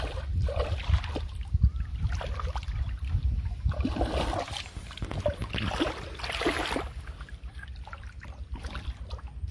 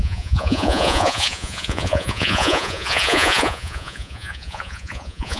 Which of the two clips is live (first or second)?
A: first